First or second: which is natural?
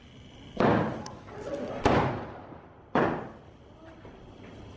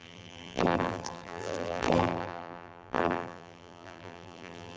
first